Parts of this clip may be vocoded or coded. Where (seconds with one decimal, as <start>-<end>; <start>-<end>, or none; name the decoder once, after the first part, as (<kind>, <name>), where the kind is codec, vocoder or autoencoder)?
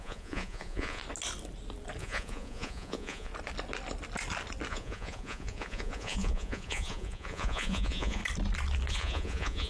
0.0-1.0 (vocoder, Vocos); 2.0-3.3; 4.7-8.2; 8.9-9.7